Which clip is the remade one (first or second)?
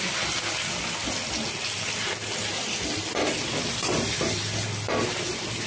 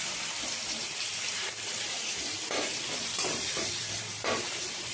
second